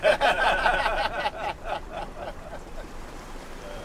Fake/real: fake